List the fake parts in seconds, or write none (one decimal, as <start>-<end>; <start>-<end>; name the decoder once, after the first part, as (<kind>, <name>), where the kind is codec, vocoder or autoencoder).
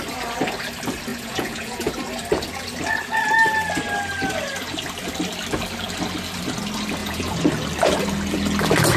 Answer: 1.1-1.9 (vocoder, Vocos); 7.0-7.5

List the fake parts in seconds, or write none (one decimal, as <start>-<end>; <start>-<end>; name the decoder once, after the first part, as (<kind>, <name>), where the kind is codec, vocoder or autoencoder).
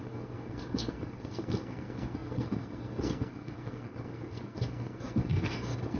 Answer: 0.0-6.0 (codec, SNAC)